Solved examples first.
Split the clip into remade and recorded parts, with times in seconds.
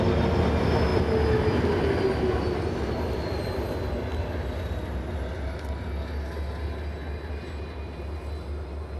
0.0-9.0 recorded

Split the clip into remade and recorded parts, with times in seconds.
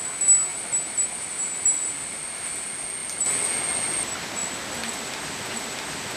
0.0-6.2 recorded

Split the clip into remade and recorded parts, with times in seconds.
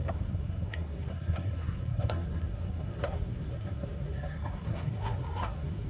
0.0-5.9 remade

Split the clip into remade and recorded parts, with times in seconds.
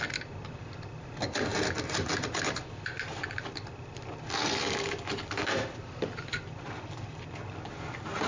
0.0-8.3 recorded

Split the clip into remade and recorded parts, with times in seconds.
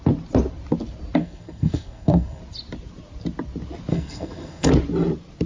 0.0-1.2 recorded; 1.2-2.4 remade; 2.4-3.9 recorded; 3.9-4.7 remade; 4.7-5.5 recorded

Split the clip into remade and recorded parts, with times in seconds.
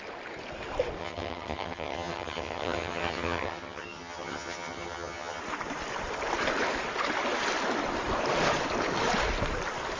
0.0-1.0 recorded; 1.0-5.4 remade; 5.4-10.0 recorded